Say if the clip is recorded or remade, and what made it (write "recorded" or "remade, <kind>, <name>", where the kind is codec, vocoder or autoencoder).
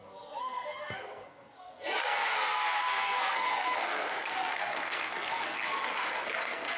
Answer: remade, codec, SNAC